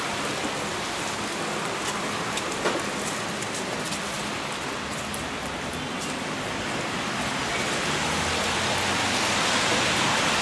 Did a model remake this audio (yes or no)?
no